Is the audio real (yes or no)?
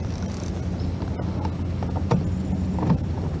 yes